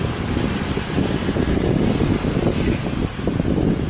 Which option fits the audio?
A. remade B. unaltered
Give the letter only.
B